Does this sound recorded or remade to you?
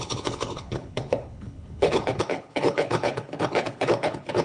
remade